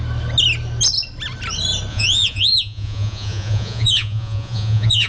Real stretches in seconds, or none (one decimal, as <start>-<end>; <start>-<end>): 0.0-1.9